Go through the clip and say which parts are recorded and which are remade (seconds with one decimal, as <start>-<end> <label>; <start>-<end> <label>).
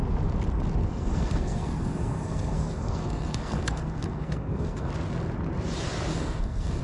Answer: 0.0-0.8 recorded; 0.8-4.9 remade; 4.9-6.1 recorded; 6.1-6.8 remade